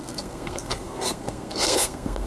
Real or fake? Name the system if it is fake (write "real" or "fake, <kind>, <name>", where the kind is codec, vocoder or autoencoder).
fake, codec, SNAC